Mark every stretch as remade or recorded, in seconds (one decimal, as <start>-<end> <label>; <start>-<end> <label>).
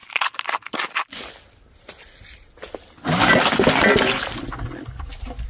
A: 0.0-5.5 recorded